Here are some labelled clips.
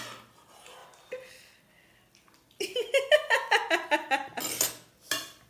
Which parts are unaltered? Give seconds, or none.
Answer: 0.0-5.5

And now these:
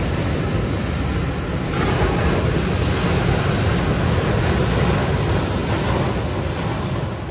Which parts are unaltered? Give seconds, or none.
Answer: 0.0-7.3

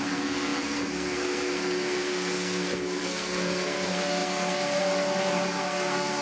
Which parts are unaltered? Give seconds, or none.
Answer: none

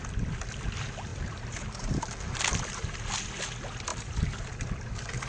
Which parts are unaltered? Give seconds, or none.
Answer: 0.0-1.1; 2.5-3.9; 4.8-5.3

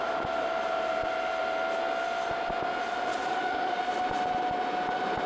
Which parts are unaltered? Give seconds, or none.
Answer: 0.0-3.1; 3.8-5.3

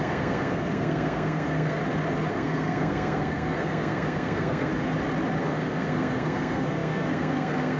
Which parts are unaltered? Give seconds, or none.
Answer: 1.8-2.3; 4.7-5.4

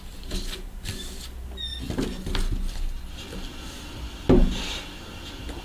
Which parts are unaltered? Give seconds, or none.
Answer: 0.0-5.6